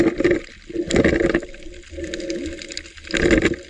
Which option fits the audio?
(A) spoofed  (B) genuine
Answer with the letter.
B